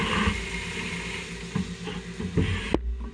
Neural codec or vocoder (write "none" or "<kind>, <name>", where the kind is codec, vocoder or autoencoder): none